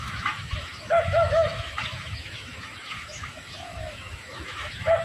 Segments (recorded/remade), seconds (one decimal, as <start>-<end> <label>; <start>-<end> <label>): 0.0-5.0 remade